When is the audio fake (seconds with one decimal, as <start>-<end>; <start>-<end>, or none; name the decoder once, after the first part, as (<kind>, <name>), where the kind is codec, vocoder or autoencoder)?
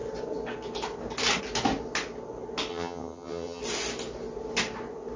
2.7-3.6 (vocoder, HiFi-GAN)